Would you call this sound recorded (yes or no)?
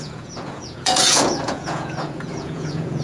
no